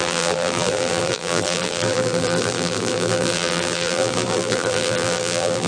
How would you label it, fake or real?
fake